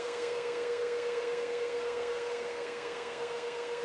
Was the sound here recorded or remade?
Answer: remade